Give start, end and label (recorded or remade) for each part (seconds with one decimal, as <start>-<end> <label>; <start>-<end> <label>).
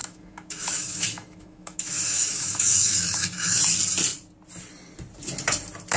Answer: 0.0-3.6 remade; 3.6-6.0 recorded